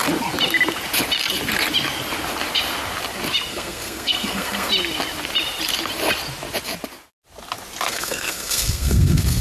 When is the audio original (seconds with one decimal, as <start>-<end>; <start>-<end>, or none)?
0.0-3.5; 4.7-7.9